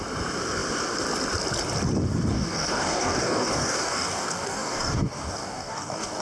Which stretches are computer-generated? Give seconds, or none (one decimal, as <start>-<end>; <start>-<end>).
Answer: 2.3-6.2